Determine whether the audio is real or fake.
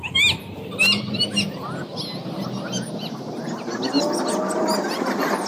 real